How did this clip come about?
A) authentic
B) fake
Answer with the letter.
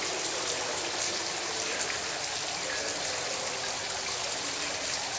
A